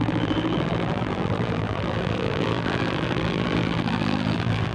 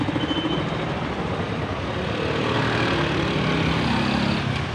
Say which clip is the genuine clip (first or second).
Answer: second